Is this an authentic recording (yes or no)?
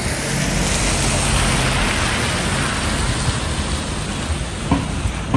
yes